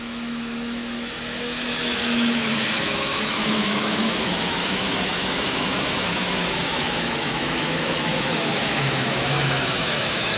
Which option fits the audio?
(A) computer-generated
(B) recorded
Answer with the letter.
A